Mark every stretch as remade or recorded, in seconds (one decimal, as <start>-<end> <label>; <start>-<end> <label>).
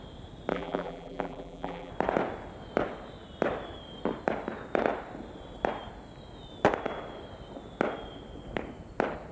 0.0-0.5 recorded; 0.5-1.9 remade; 1.9-9.3 recorded